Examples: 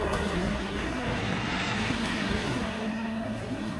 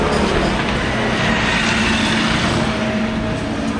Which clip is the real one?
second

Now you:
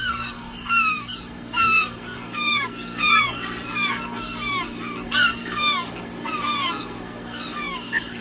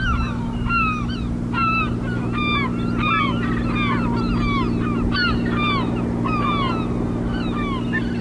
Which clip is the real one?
second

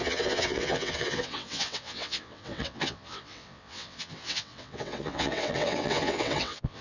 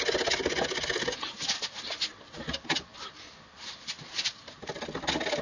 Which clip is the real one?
second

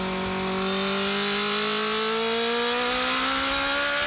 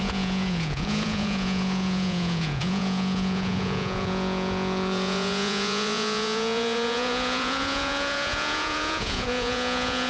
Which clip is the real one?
first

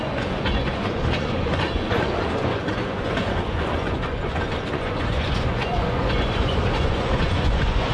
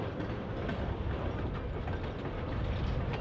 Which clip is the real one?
second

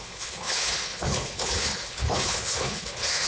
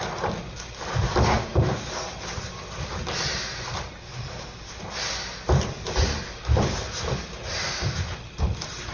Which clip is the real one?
second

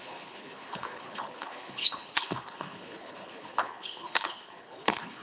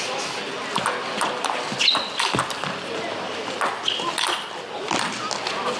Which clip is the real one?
second